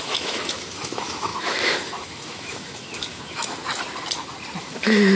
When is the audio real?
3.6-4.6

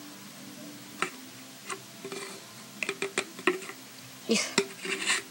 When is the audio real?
0.0-5.3

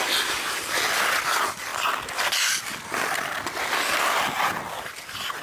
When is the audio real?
0.0-5.4